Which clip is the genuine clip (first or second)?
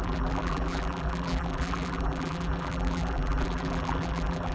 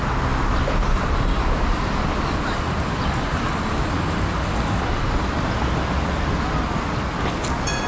second